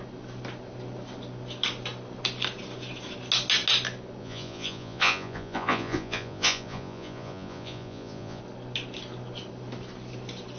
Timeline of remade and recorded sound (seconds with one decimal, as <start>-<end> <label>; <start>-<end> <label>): 0.0-4.2 recorded; 4.2-8.4 remade; 8.4-10.6 recorded